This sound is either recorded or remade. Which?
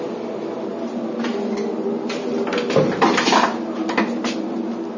recorded